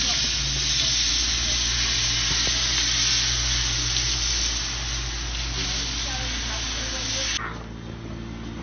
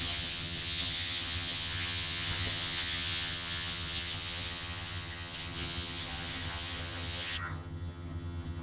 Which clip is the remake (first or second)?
second